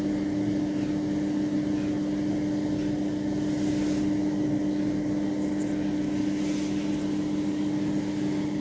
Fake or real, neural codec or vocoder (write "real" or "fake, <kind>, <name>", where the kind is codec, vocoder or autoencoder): real